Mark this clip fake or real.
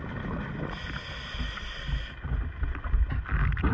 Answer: real